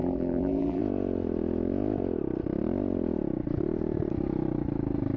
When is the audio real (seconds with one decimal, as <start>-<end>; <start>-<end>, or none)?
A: 0.8-5.2